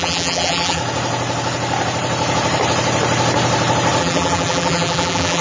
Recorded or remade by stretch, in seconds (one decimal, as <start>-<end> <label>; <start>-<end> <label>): 0.0-0.8 remade; 0.8-4.0 recorded; 4.0-5.4 remade